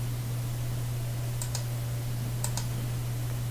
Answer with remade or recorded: recorded